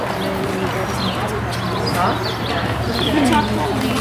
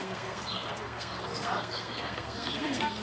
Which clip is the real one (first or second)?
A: first